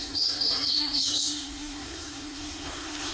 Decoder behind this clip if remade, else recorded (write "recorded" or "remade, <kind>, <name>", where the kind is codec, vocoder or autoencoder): remade, codec, SNAC